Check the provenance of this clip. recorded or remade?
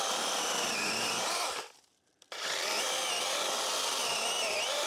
remade